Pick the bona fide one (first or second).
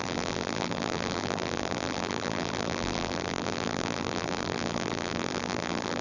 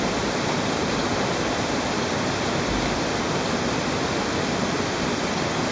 second